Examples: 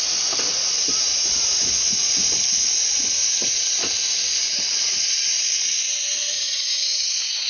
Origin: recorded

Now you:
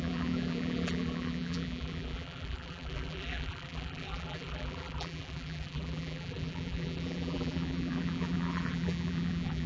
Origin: remade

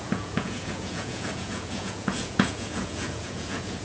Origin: remade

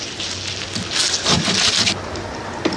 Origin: recorded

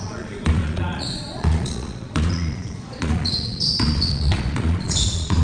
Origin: remade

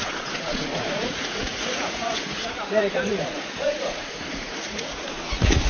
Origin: remade